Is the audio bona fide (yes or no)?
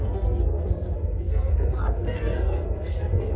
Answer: no